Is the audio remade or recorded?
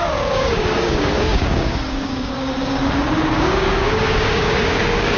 remade